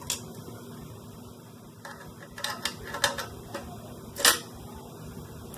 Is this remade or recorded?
recorded